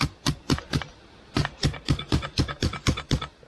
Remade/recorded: recorded